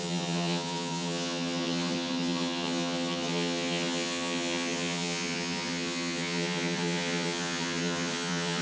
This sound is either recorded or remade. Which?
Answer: remade